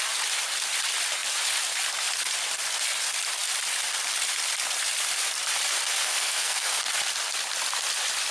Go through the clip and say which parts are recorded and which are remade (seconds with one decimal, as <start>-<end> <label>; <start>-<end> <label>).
0.0-6.0 recorded; 6.0-6.8 remade; 6.8-8.3 recorded